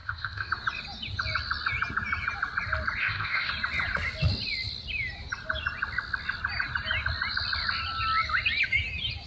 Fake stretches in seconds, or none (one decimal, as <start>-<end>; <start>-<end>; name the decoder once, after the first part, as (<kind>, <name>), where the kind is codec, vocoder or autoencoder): 0.0-0.5 (codec, ZipCodec); 3.0-3.5